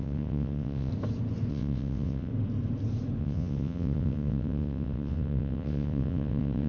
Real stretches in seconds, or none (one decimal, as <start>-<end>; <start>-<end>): 0.9-1.5; 2.3-3.2